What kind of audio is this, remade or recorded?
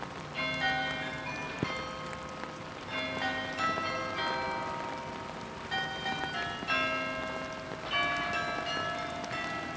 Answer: recorded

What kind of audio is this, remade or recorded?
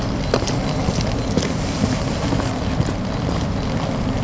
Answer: recorded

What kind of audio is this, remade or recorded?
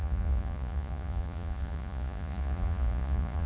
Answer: remade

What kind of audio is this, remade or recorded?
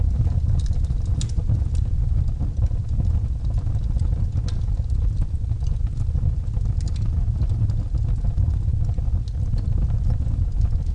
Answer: recorded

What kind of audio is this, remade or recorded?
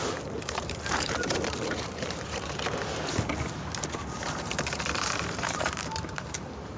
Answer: remade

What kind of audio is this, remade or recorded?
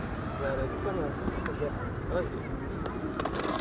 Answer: recorded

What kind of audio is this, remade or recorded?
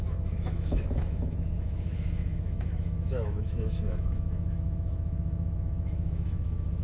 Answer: remade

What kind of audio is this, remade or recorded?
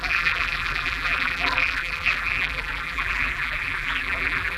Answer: remade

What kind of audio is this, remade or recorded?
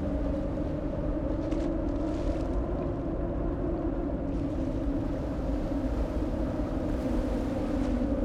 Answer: recorded